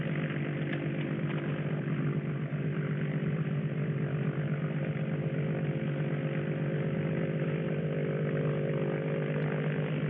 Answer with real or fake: real